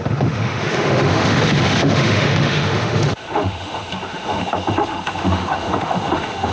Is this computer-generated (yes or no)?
yes